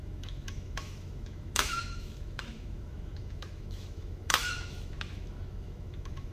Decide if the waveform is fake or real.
fake